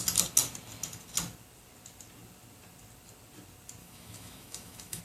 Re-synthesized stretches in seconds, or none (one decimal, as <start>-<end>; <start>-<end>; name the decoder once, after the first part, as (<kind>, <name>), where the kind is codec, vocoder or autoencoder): 3.8-5.0 (autoencoder, DAC-VAE)